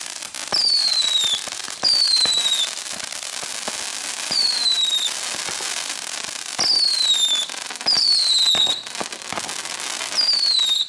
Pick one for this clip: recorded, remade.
recorded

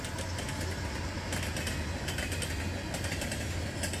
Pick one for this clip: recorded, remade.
recorded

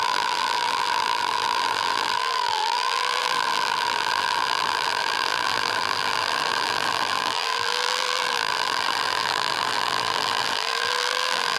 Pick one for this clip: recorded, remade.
remade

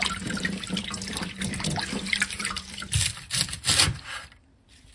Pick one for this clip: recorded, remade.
remade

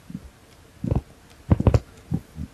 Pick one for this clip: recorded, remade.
recorded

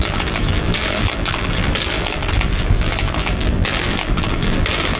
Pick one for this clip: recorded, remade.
remade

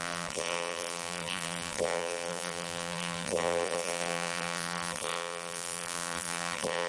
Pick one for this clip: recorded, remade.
remade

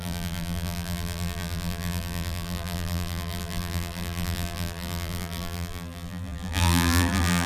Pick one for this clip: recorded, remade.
remade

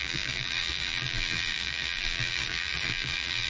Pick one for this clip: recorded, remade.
remade